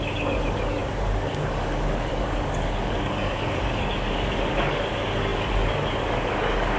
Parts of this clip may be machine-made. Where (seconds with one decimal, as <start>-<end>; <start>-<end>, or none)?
0.0-6.8